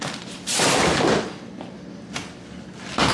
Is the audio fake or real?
real